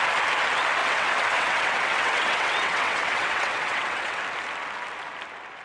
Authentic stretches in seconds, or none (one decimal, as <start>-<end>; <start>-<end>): 0.0-0.8; 4.2-5.6

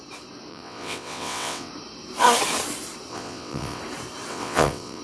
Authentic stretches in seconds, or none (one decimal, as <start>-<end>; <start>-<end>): 0.0-0.5; 1.7-3.1; 3.8-4.3

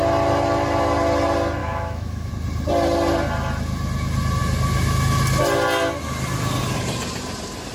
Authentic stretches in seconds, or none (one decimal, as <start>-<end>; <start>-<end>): 0.0-1.6; 2.3-7.7

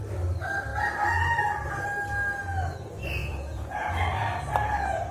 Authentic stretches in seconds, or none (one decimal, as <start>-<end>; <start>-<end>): 0.0-3.2; 3.9-5.1

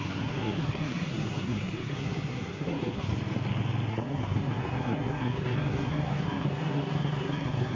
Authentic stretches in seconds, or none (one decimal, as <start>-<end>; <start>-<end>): 3.1-3.9

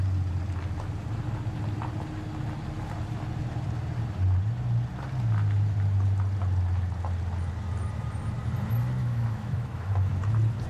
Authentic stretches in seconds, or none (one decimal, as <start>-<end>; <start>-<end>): 0.0-9.0; 10.1-10.7

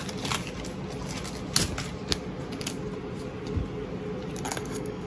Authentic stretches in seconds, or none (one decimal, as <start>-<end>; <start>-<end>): 0.0-4.5

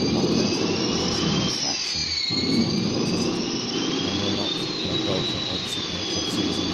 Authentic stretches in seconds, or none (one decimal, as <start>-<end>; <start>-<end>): none